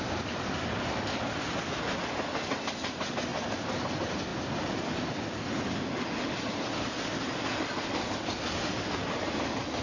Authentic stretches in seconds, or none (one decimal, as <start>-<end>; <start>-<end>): 0.0-9.8